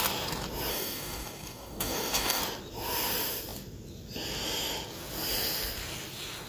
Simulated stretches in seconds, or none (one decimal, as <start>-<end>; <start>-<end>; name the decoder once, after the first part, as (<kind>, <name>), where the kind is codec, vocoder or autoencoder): 0.7-2.4 (codec, DAC)